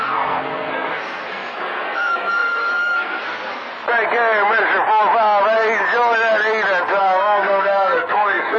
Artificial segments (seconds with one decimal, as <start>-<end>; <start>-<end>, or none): 0.0-3.7; 7.0-8.6